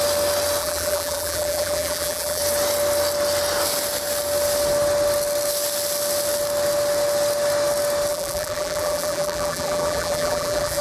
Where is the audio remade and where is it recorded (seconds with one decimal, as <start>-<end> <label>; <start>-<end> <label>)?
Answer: 0.0-0.6 recorded; 0.6-2.4 remade; 2.4-8.1 recorded; 8.1-10.8 remade